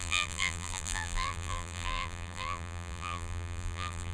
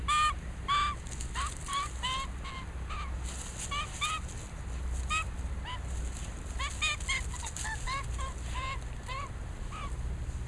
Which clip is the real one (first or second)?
second